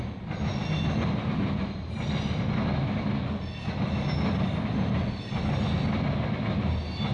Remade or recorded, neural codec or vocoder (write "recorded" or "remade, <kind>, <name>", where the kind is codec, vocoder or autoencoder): recorded